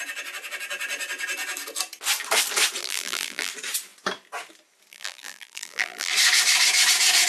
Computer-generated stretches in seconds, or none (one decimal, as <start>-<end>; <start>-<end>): 2.8-3.5; 4.9-6.1